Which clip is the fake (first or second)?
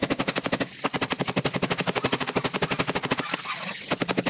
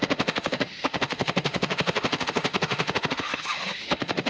second